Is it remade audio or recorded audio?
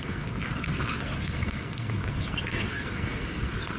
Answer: remade